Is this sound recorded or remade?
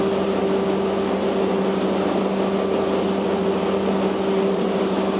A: recorded